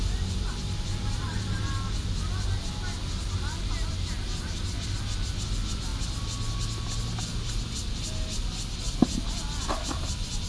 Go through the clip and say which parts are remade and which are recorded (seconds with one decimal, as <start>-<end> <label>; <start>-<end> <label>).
0.0-10.5 recorded